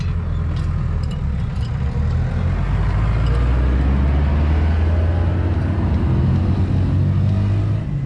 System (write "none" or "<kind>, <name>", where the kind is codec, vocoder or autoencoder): none